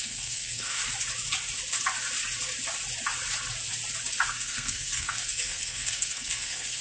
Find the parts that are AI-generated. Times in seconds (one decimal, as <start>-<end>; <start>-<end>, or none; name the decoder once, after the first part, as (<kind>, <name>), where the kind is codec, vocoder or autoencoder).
0.0-0.8 (codec, SNAC); 4.3-6.8